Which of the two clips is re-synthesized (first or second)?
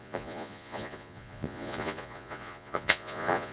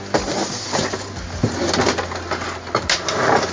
first